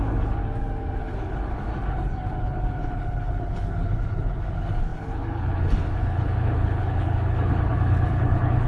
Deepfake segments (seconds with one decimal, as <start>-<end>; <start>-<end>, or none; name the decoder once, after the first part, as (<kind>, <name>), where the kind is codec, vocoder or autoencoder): 0.0-0.4 (codec, HILCodec); 1.0-1.7; 2.4-8.7